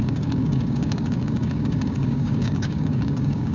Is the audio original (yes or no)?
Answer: no